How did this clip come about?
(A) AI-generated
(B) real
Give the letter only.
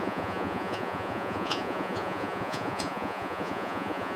A